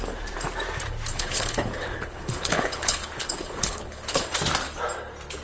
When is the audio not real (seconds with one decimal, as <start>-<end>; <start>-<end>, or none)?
1.1-4.3